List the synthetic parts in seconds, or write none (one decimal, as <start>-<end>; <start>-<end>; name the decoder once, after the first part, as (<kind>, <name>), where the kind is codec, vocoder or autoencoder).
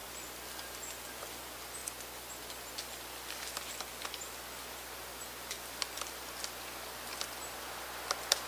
none